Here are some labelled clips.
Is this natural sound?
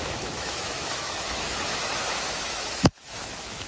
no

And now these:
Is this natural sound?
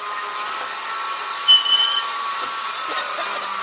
yes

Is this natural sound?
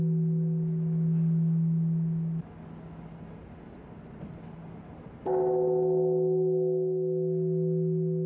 yes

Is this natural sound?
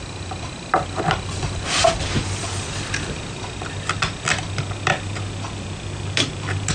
yes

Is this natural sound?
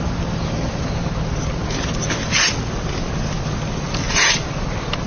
yes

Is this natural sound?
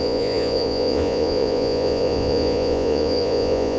no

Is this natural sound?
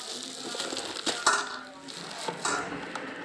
yes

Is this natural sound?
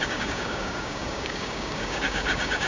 no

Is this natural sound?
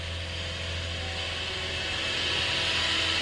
yes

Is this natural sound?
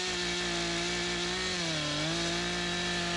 yes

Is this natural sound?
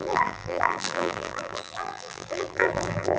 no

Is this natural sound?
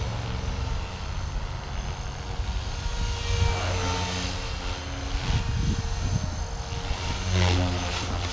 yes